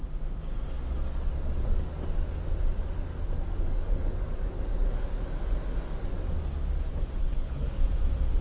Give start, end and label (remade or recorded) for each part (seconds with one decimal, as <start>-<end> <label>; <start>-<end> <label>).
0.0-3.1 recorded; 3.1-5.2 remade; 5.2-7.3 recorded; 7.3-7.8 remade; 7.8-8.4 recorded